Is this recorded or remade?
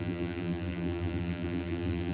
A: remade